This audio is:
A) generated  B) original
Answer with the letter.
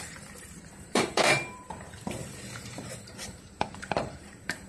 A